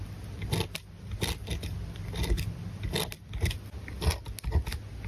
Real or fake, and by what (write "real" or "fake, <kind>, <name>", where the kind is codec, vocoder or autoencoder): real